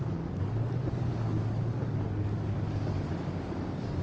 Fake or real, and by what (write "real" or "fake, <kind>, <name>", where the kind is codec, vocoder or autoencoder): fake, codec, DAC